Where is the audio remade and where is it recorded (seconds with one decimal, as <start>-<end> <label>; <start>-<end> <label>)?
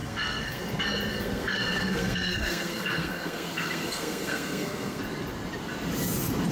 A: 0.0-0.7 remade; 0.7-1.1 recorded; 1.1-5.0 remade; 5.0-6.5 recorded